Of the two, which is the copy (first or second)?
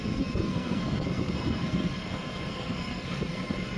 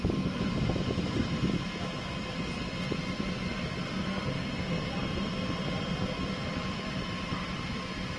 first